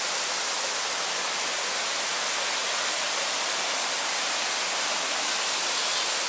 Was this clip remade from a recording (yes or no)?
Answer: no